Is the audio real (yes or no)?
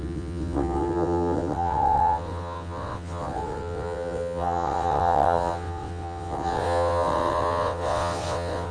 no